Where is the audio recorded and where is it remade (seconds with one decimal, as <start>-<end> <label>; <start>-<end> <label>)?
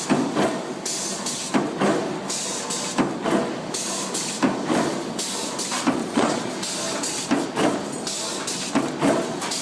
0.0-6.0 recorded; 6.0-6.5 remade; 6.5-9.6 recorded